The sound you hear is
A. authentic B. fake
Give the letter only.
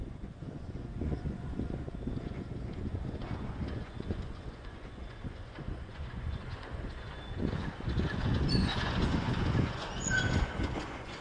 B